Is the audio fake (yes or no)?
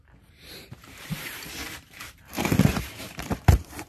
yes